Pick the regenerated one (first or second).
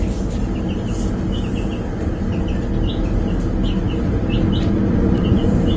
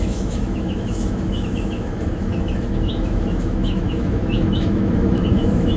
second